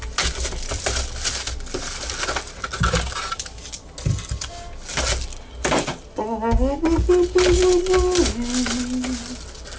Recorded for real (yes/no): yes